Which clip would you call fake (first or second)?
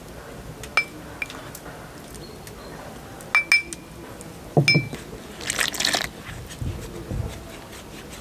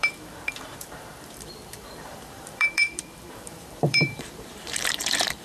second